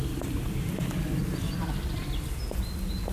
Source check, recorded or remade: recorded